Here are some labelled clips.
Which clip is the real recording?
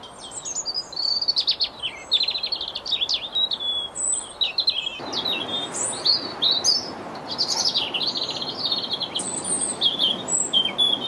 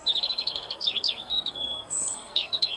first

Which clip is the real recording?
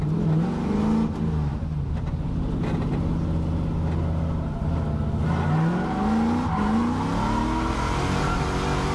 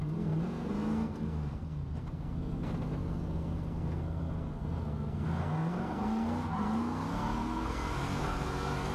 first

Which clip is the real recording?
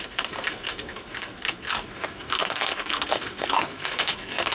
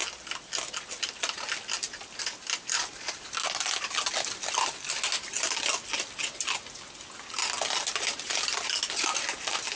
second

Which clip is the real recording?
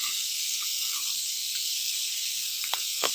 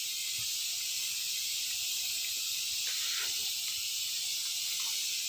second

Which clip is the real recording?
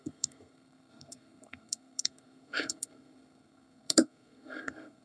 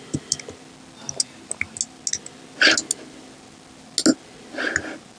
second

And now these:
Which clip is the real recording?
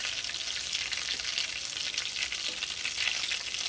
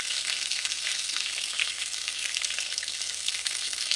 first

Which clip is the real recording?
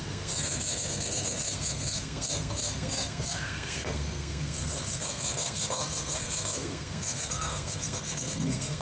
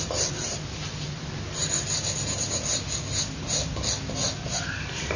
second